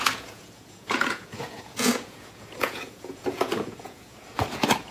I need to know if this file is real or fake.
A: fake